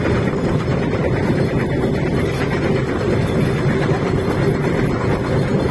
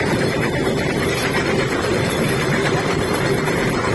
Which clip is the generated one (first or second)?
second